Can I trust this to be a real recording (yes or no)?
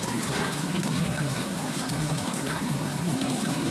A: no